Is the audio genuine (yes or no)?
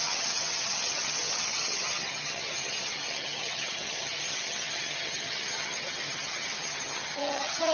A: no